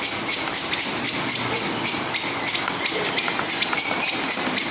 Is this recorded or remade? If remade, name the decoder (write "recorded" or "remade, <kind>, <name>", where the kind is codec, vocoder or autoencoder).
recorded